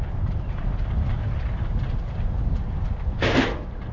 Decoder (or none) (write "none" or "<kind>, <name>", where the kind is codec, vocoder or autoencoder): none